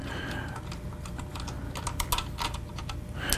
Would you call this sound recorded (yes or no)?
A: yes